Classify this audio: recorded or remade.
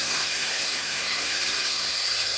remade